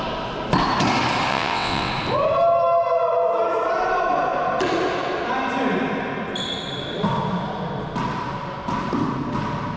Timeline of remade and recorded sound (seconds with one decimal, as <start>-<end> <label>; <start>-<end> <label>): 0.0-1.3 recorded; 1.3-1.9 remade; 1.9-9.8 recorded